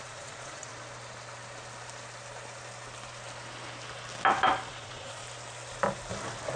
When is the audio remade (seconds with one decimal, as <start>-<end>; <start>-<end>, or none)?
0.0-0.7; 4.7-5.2

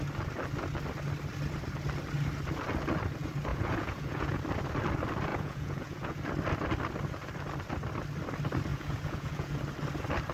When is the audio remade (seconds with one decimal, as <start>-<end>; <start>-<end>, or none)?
3.5-4.4; 5.3-6.3; 8.7-9.6

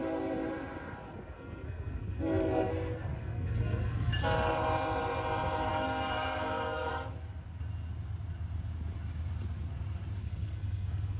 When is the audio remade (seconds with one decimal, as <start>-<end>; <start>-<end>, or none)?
1.3-2.7; 3.2-4.1; 5.7-6.9; 10.2-11.2

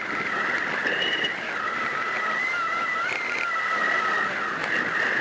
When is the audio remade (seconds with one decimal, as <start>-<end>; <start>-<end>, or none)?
none

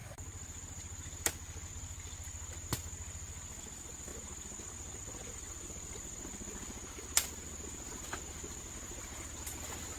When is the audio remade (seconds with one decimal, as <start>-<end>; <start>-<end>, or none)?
none